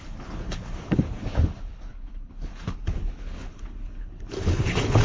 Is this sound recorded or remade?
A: remade